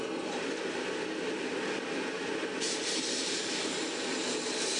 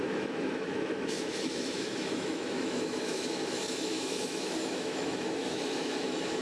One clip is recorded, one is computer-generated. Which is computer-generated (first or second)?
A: second